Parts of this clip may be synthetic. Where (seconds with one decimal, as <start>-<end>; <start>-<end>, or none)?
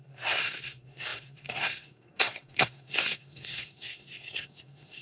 0.0-5.0